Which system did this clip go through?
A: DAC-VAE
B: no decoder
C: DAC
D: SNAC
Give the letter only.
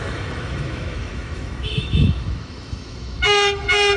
A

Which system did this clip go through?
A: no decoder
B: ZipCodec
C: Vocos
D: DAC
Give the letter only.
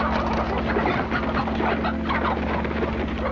A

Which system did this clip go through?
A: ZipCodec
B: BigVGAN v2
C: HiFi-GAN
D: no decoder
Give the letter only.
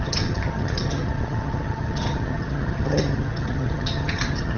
C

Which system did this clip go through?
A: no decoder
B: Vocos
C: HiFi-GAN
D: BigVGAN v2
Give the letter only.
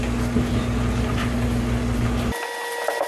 A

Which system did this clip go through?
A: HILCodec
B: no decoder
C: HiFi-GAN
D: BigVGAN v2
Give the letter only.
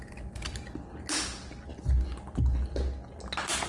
B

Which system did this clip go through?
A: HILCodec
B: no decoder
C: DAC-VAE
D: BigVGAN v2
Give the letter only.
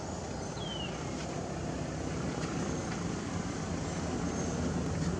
B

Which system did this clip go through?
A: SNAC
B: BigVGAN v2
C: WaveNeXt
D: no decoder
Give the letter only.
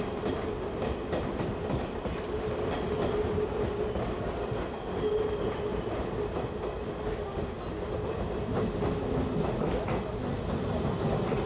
D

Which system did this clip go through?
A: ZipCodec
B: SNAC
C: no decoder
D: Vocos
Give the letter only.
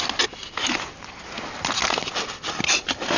C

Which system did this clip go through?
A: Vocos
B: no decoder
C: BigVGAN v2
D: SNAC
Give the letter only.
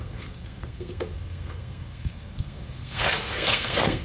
D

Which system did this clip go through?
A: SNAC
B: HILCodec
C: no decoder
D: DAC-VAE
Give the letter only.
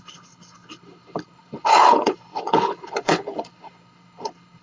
B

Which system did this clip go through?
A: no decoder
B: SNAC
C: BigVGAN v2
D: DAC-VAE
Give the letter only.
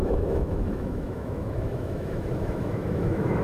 D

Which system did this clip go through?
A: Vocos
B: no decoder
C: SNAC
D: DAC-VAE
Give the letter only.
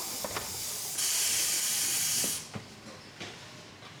B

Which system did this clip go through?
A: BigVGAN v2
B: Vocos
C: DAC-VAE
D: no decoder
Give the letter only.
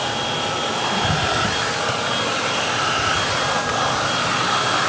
D